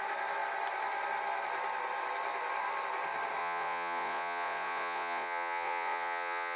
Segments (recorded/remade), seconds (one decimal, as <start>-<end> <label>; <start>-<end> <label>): 0.0-3.4 recorded; 3.4-6.6 remade